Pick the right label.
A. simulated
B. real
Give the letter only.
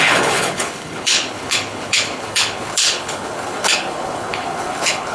A